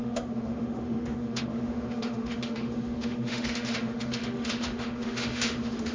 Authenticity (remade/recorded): remade